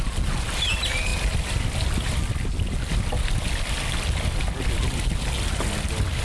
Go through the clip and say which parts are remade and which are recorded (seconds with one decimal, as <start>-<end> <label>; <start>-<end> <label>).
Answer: 0.0-6.2 recorded